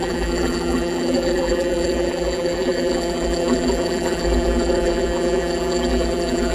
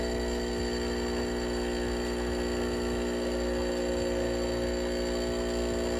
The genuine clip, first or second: second